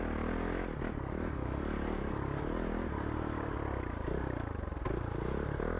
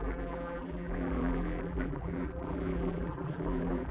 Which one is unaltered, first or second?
first